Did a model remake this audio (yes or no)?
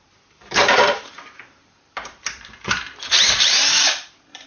yes